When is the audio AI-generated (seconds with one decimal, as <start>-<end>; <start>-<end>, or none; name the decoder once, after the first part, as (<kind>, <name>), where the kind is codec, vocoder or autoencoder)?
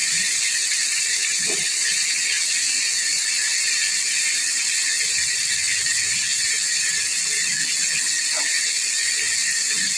3.9-10.0 (vocoder, BigVGAN v2)